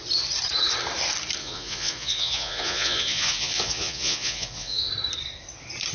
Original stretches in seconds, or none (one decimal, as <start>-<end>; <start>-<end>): 0.0-1.4; 4.9-5.9